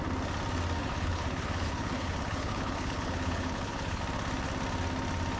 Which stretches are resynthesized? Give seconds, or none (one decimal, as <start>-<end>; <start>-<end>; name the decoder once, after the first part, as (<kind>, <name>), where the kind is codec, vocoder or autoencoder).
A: 0.8-4.0 (codec, HILCodec)